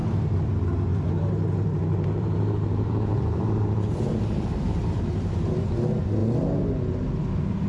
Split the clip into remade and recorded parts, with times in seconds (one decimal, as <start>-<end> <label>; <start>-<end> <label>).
0.0-0.5 remade; 0.5-0.9 recorded; 0.9-5.5 remade; 5.5-7.7 recorded